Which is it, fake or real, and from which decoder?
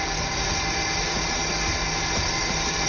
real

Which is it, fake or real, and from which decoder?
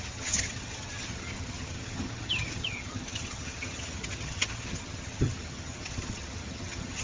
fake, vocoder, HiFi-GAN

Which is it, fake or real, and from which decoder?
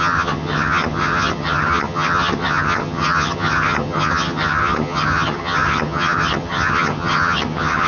fake, vocoder, HiFi-GAN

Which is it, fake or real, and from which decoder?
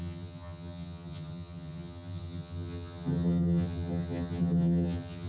fake, vocoder, HiFi-GAN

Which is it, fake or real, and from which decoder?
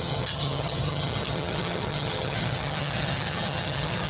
fake, vocoder, HiFi-GAN